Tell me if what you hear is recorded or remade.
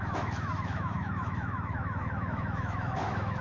remade